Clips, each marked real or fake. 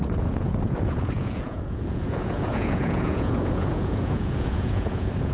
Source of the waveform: fake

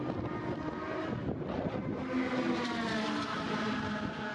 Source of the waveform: real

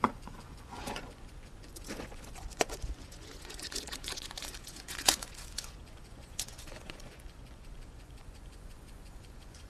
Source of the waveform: fake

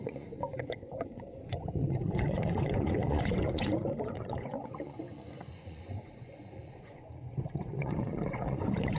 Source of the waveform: fake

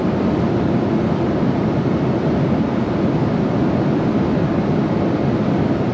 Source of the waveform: real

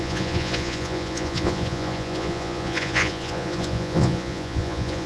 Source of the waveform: fake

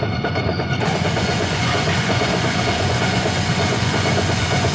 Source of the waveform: fake